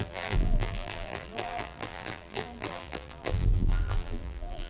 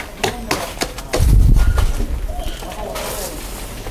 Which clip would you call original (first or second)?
second